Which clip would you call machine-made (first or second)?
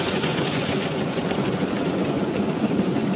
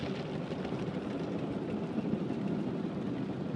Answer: first